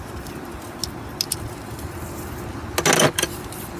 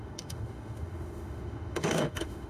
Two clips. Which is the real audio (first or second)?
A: first